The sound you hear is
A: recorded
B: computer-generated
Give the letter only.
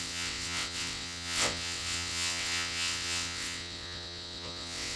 B